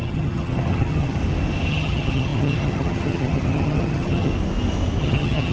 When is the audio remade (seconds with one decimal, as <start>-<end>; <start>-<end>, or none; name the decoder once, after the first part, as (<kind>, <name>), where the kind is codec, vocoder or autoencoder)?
0.0-1.2 (vocoder, HiFi-GAN); 1.7-4.3; 5.0-5.5